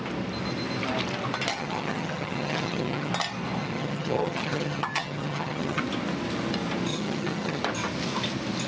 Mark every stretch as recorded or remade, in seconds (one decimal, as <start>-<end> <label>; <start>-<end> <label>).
0.0-1.5 recorded; 1.5-3.1 remade; 3.1-3.6 recorded; 3.6-5.8 remade; 5.8-6.9 recorded; 6.9-7.6 remade; 7.6-8.7 recorded